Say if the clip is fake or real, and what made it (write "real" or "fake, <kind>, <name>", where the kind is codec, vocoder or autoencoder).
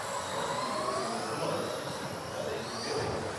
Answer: real